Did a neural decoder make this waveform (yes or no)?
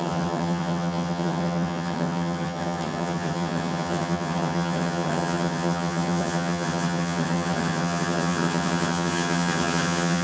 yes